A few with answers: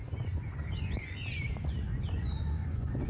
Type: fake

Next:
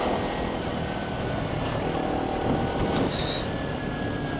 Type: real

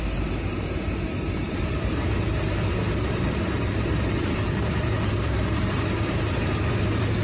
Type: fake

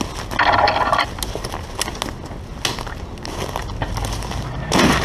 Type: real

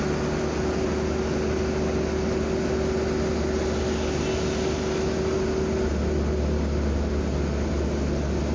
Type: real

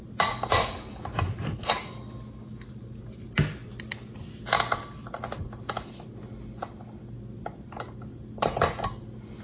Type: real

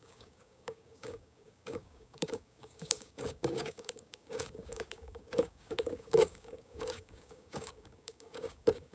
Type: fake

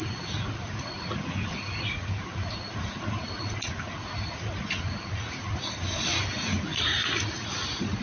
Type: fake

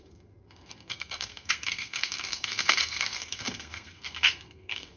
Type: fake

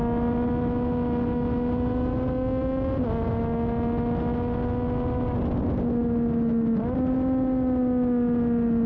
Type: real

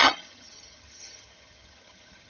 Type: fake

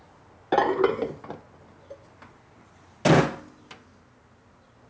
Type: real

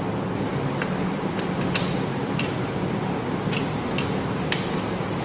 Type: real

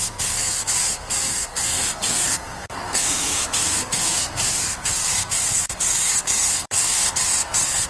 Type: fake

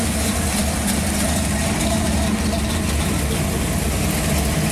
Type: real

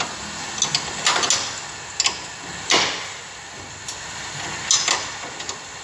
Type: real